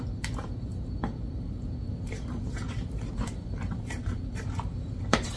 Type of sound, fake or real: fake